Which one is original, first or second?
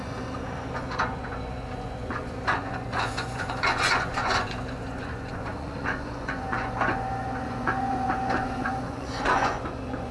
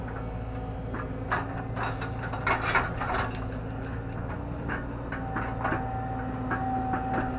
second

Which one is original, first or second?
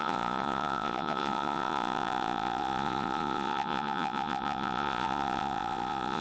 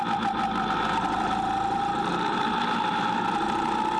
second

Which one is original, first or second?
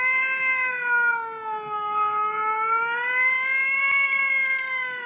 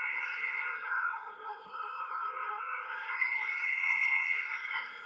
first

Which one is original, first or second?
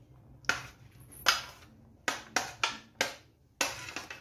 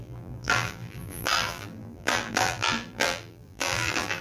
first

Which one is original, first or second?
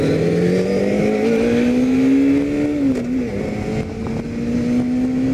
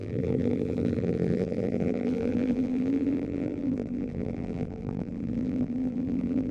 first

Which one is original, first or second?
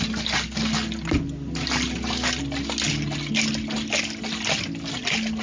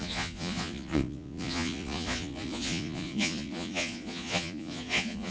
first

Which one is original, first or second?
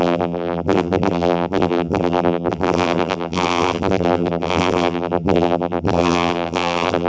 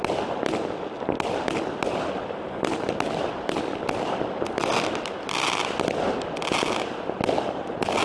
second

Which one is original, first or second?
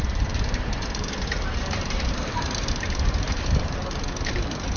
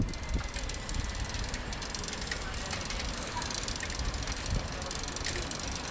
second